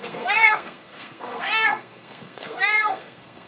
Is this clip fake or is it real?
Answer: fake